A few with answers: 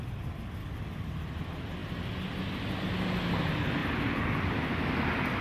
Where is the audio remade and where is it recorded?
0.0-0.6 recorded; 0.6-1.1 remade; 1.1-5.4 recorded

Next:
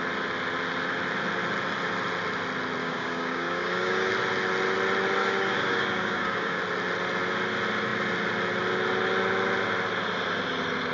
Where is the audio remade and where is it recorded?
0.0-2.8 recorded; 2.8-4.1 remade; 4.1-5.2 recorded; 5.2-6.6 remade; 6.6-10.9 recorded

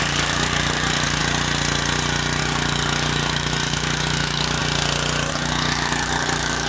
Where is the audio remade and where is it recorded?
0.0-1.2 remade; 1.2-2.4 recorded; 2.4-4.6 remade; 4.6-5.3 recorded; 5.3-6.7 remade

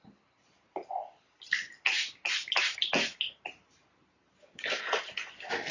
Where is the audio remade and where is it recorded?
0.0-4.4 recorded; 4.4-4.9 remade; 4.9-5.7 recorded

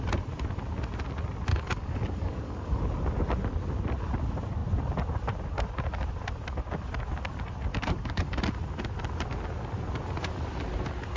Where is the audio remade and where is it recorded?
0.0-1.5 recorded; 1.5-2.8 remade; 2.8-7.7 recorded; 7.7-8.4 remade; 8.4-11.2 recorded

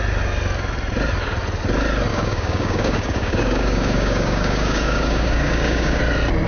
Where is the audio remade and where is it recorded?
0.0-2.1 recorded; 2.1-6.0 remade; 6.0-6.5 recorded

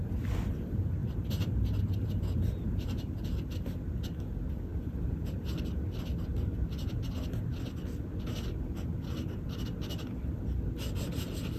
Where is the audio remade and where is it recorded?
0.0-11.6 recorded